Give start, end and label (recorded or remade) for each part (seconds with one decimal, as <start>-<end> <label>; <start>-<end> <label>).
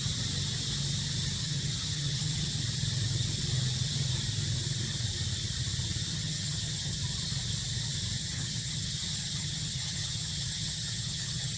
0.0-1.4 recorded; 1.4-2.5 remade; 2.5-6.1 recorded; 6.1-7.0 remade; 7.0-8.2 recorded; 8.2-11.6 remade